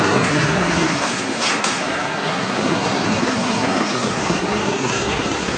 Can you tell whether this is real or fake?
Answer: fake